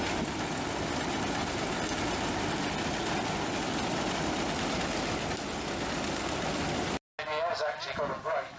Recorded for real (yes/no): yes